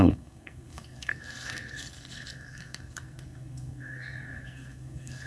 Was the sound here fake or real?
fake